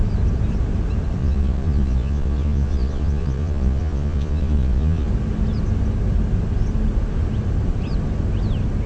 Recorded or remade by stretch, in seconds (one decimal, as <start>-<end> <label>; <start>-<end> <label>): 0.0-1.2 recorded; 1.2-5.1 remade; 5.1-8.9 recorded